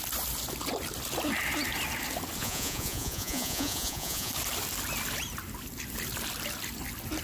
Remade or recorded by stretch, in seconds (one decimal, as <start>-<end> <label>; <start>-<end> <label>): 0.0-2.4 recorded; 2.4-4.3 remade; 4.3-7.2 recorded